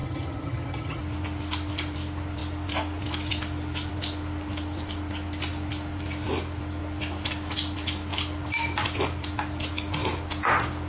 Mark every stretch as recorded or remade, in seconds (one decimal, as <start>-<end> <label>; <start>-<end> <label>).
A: 0.0-1.0 remade; 1.0-10.9 recorded